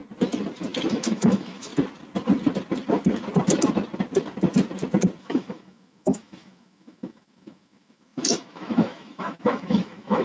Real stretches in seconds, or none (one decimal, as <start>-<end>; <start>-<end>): 0.0-0.9; 1.7-5.2

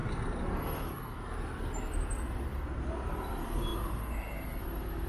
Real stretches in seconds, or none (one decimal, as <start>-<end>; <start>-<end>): 0.0-5.1

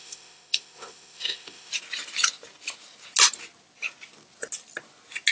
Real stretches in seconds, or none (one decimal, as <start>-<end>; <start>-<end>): 1.7-5.3

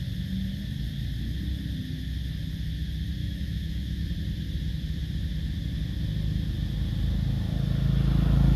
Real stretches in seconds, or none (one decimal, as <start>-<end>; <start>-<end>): 0.0-3.2; 4.1-8.6

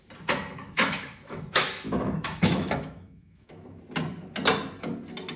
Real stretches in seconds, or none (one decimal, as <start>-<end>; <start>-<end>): 0.0-0.6; 3.8-5.4

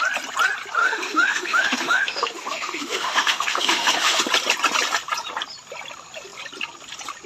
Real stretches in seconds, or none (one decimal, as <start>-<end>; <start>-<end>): 0.0-0.8; 4.2-7.3